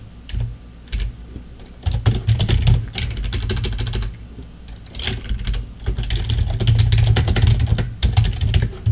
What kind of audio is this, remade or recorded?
recorded